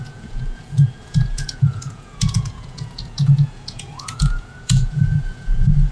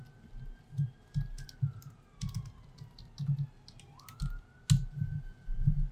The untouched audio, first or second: second